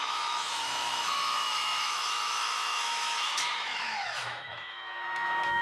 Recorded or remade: remade